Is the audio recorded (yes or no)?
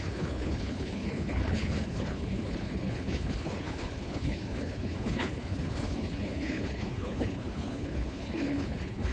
no